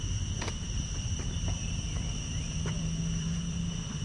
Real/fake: fake